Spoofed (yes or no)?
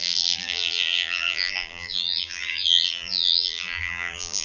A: yes